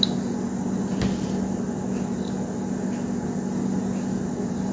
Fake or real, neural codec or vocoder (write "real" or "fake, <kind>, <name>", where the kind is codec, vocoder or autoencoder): real